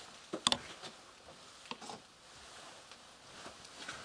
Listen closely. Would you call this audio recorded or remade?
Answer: recorded